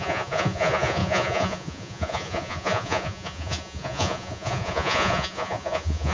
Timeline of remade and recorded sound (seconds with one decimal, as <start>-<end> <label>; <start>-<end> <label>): 0.0-6.1 remade